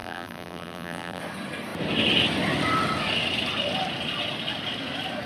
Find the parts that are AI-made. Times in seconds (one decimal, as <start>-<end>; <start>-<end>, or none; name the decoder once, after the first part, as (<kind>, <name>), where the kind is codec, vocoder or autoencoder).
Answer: 0.0-1.2 (vocoder, BigVGAN v2)